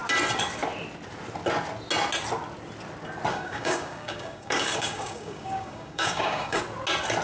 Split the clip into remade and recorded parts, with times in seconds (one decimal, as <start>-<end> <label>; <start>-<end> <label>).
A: 0.0-3.3 recorded; 3.3-6.6 remade; 6.6-7.2 recorded